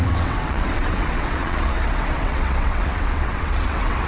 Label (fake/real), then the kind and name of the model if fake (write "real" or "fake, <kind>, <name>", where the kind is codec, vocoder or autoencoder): fake, vocoder, WaveNeXt